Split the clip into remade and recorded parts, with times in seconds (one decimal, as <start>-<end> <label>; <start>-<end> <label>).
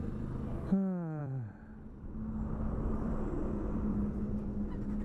0.0-1.2 recorded; 1.2-4.2 remade; 4.2-5.0 recorded